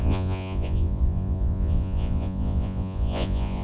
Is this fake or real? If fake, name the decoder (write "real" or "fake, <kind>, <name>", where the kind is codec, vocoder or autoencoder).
fake, vocoder, Vocos